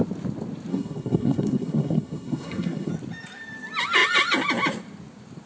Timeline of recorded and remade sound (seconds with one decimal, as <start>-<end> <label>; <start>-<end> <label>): 0.0-0.7 recorded; 0.7-2.9 remade; 2.9-5.5 recorded